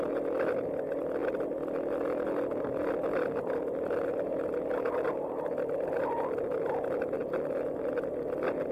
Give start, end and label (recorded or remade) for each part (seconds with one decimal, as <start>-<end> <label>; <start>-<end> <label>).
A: 0.0-8.7 recorded